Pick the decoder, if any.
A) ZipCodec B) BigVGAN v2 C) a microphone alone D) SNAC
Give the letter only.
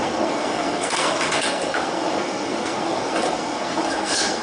D